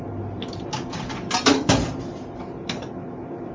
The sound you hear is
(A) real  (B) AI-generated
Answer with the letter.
A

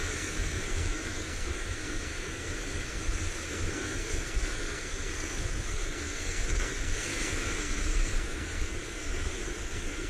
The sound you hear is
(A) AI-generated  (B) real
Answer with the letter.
A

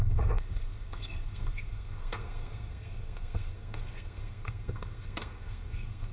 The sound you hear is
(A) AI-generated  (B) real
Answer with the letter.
A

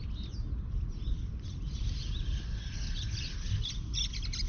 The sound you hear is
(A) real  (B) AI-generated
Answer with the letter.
A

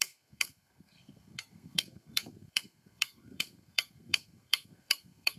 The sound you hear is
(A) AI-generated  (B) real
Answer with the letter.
A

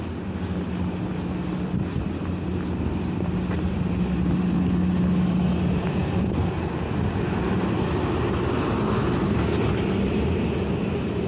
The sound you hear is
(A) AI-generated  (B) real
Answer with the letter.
B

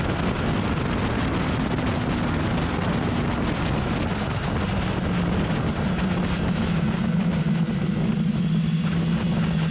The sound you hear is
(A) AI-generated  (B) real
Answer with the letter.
B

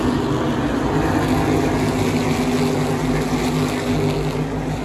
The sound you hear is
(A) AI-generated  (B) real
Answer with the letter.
B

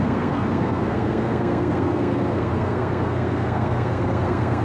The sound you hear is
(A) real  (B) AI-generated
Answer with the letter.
B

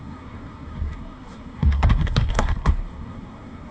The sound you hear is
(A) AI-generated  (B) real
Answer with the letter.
A